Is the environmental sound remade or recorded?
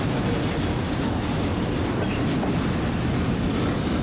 recorded